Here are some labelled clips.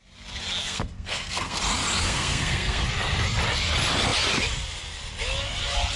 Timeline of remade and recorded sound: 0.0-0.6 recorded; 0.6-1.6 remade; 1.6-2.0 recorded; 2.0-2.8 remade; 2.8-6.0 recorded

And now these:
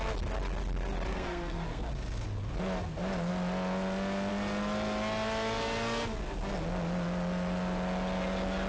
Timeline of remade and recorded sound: 0.0-1.1 recorded; 1.1-1.9 remade; 1.9-8.7 recorded